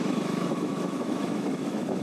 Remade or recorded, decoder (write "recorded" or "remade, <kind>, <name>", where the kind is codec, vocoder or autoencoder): remade, autoencoder, DAC-VAE